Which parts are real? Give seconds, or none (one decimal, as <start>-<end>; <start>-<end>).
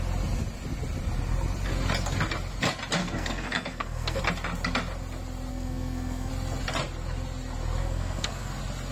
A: 0.0-3.0; 4.2-5.5; 6.3-7.8; 8.5-8.9